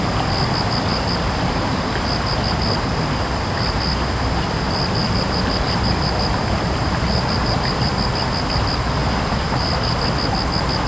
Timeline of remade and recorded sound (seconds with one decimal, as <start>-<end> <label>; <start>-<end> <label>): 0.0-0.9 recorded; 0.9-2.1 remade; 2.1-5.0 recorded; 5.0-7.9 remade; 7.9-9.0 recorded; 9.0-9.9 remade; 9.9-10.9 recorded